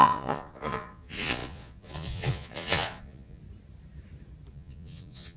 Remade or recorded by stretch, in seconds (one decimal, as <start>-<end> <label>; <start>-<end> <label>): 0.0-3.4 remade; 3.4-4.5 recorded; 4.5-5.4 remade